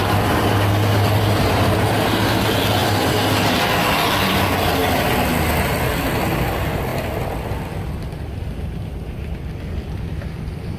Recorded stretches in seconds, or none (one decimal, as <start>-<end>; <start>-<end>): 0.0-10.8